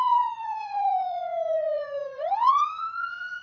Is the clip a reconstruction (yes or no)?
yes